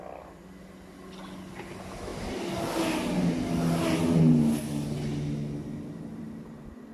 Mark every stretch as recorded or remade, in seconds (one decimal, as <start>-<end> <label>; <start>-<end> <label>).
0.0-6.9 recorded